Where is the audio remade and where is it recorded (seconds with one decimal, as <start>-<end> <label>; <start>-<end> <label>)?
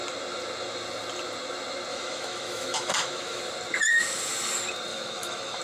0.0-1.9 recorded; 1.9-3.4 remade; 3.4-4.9 recorded; 4.9-5.6 remade